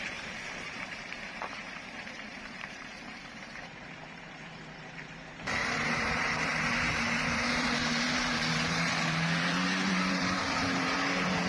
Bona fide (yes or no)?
no